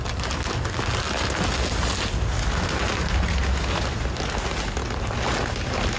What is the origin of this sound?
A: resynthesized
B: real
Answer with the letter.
B